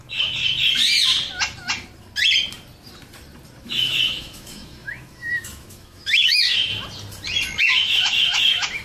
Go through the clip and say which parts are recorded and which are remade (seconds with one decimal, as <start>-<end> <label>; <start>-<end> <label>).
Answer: 0.0-0.4 remade; 0.4-3.6 recorded; 3.6-6.7 remade; 6.7-7.6 recorded; 7.6-8.8 remade